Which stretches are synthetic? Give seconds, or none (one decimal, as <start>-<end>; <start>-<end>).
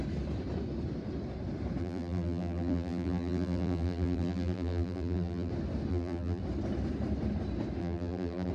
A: 1.8-5.5; 5.9-6.4; 7.8-8.5